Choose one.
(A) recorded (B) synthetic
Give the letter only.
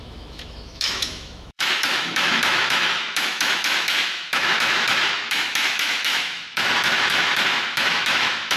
B